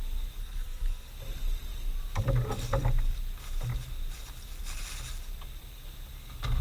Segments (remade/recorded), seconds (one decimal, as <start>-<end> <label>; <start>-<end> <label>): 0.0-0.4 recorded; 0.4-1.1 remade; 1.1-6.6 recorded